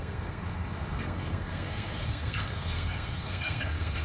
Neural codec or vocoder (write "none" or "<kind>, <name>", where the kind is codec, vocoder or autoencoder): codec, SNAC